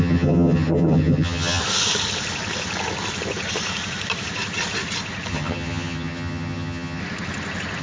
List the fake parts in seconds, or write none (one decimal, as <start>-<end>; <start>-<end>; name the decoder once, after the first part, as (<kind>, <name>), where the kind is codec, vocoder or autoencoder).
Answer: 0.0-1.6 (vocoder, HiFi-GAN); 5.3-7.0